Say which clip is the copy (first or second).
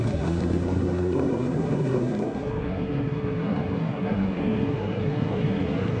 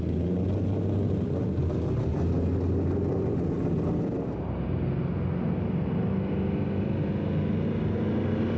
first